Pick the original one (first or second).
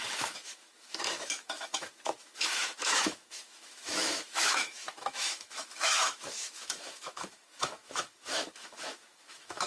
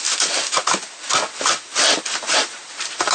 second